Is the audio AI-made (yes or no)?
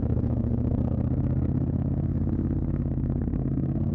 yes